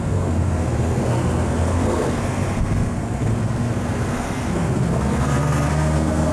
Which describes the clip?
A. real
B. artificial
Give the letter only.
B